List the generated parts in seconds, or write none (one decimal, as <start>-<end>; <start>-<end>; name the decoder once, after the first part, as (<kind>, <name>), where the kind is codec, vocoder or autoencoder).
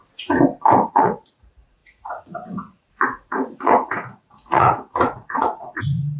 0.9-6.2 (vocoder, Vocos)